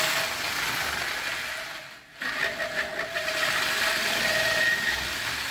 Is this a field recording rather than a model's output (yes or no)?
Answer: yes